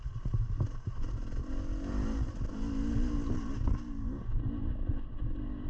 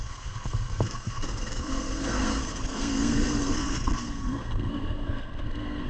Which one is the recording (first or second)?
first